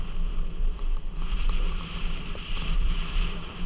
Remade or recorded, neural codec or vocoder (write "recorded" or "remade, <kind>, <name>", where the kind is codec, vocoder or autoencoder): remade, vocoder, BigVGAN v2